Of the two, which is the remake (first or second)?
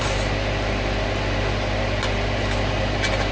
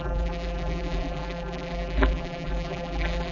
second